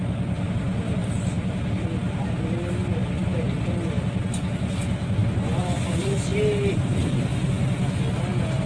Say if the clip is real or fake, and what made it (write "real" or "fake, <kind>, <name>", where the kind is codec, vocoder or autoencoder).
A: real